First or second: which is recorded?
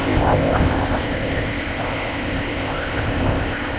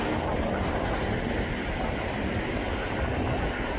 second